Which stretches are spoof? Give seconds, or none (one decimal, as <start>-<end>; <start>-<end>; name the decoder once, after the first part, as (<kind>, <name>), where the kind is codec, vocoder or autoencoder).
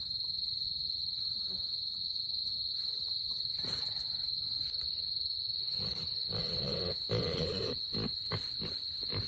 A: none